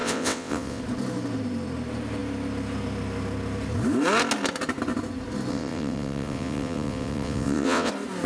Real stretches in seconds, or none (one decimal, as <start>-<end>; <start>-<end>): 0.8-5.5; 7.9-8.3